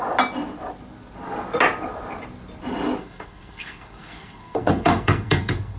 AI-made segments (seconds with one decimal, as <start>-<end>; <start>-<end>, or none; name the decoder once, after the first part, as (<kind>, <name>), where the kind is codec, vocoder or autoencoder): 3.0-5.8 (codec, SNAC)